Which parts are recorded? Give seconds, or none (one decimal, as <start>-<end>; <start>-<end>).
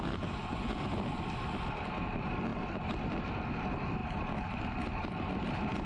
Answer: 0.0-0.4; 0.9-5.9